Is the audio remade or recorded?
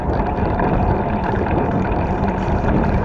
remade